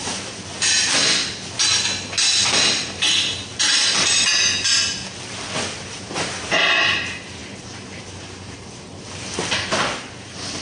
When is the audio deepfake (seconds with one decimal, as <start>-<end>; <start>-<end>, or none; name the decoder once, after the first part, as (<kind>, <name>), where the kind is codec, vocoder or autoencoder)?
0.0-1.0 (vocoder, BigVGAN v2); 5.8-8.9; 10.2-10.6